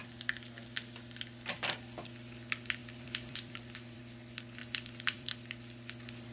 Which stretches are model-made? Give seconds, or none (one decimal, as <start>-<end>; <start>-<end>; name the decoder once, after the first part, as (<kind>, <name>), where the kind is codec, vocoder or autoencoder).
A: 2.8-4.0 (vocoder, BigVGAN v2); 4.6-5.3